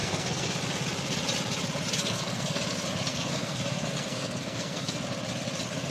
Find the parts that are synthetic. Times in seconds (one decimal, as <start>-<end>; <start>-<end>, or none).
0.0-0.6; 2.0-2.6; 3.1-5.0